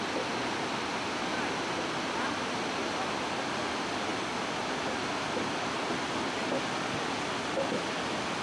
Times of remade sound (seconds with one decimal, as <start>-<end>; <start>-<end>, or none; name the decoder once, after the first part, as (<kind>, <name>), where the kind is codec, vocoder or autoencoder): none